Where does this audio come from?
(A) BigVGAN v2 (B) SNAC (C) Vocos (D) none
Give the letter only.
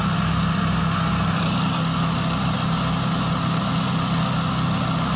D